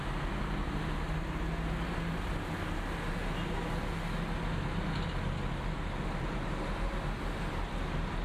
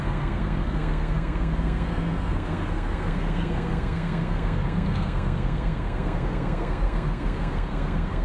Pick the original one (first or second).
first